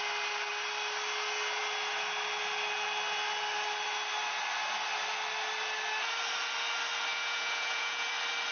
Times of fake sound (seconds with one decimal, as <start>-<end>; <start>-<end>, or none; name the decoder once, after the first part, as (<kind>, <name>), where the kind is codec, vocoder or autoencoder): 7.1-8.1 (vocoder, Vocos)